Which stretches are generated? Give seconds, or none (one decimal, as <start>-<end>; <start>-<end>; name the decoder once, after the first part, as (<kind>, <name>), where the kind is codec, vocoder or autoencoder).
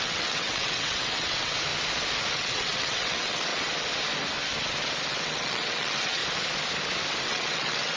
0.0-1.7 (vocoder, WaveNeXt); 2.3-3.5; 5.1-6.2; 7.2-8.0